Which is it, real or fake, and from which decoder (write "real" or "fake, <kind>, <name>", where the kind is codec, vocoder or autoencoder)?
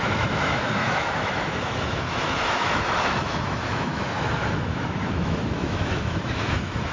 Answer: fake, autoencoder, DAC-VAE